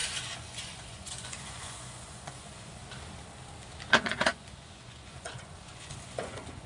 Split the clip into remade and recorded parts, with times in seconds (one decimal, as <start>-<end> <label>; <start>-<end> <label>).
0.0-2.8 remade; 2.8-3.9 recorded; 3.9-6.7 remade